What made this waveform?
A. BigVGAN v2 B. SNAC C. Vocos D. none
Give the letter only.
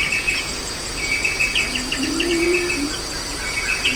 C